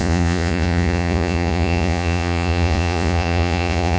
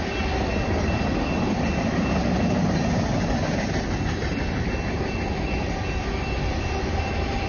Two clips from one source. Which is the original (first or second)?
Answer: second